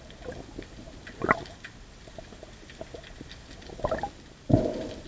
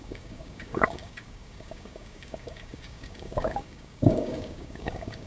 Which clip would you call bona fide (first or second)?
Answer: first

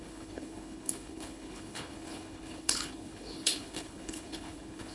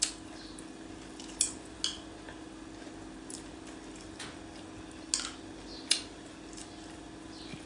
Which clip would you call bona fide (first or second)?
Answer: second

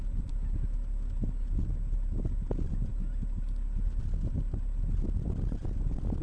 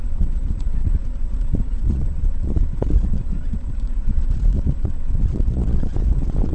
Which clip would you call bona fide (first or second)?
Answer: first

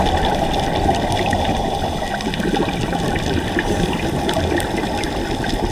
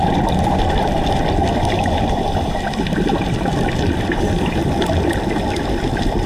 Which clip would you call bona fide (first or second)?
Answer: first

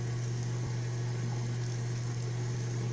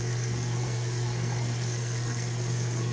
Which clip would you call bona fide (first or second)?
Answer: first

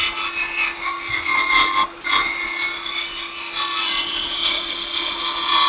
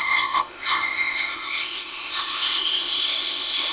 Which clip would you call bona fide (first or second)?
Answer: first